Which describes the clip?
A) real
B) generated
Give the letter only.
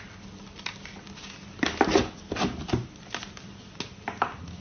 A